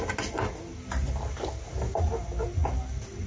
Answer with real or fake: real